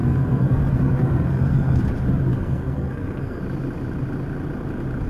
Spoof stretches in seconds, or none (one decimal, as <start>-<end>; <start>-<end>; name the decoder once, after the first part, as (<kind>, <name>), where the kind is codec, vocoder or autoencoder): 0.0-1.8 (codec, SNAC); 2.3-3.4